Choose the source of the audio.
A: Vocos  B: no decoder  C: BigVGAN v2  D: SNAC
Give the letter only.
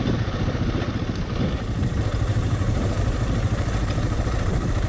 C